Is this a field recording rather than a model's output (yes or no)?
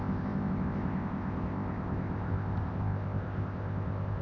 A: no